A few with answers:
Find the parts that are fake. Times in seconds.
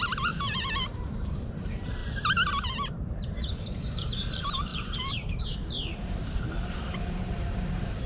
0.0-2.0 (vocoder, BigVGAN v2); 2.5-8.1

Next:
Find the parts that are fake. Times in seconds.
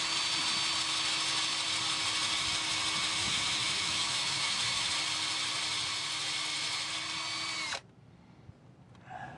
3.2-4.9 (autoencoder, DAC-VAE)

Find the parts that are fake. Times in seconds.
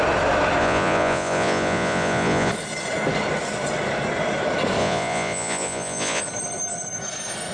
0.6-2.5 (vocoder, Vocos); 4.8-6.2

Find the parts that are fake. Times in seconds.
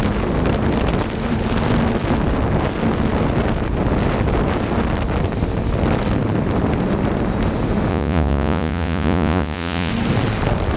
7.9-9.9 (vocoder, Vocos)